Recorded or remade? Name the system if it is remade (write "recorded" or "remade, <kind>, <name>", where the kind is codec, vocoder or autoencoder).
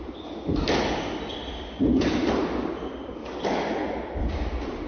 recorded